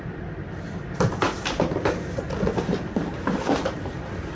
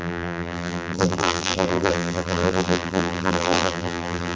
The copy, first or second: second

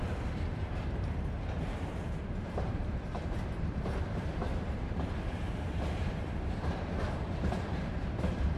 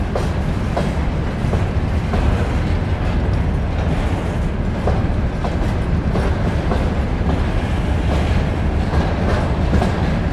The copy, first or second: first